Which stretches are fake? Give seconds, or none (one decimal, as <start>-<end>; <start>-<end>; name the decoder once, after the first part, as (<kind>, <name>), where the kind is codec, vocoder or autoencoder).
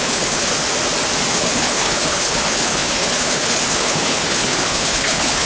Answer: 0.0-0.5 (codec, HILCodec); 1.3-5.5